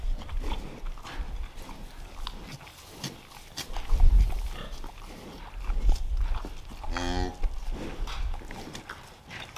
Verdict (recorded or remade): recorded